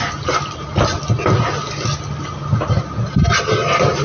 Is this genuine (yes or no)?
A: yes